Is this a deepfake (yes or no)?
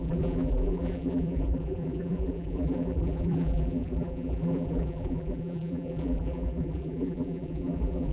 yes